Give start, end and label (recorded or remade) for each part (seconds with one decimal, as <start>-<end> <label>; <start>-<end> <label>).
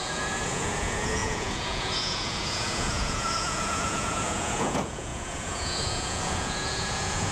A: 0.0-7.3 remade